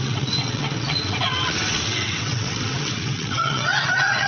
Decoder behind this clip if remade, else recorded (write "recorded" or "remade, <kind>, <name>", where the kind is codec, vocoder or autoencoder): remade, vocoder, WaveNeXt